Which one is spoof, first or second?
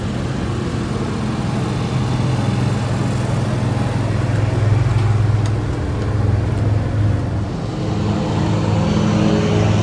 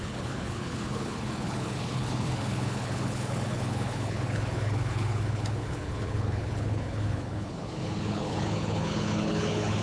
second